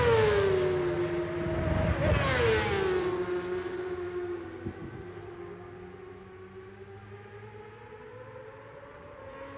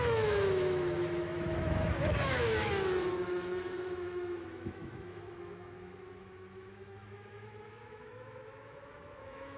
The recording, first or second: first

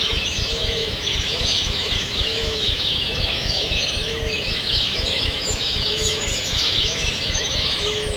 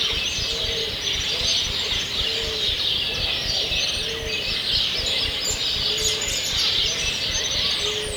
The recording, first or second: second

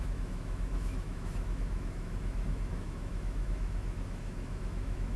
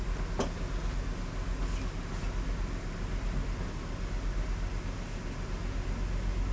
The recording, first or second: second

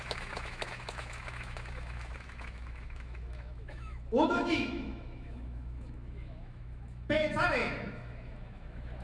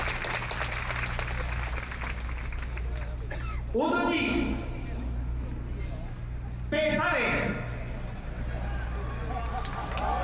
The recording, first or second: second